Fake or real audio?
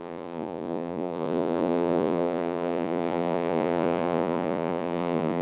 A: fake